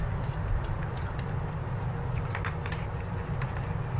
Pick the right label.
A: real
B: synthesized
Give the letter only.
A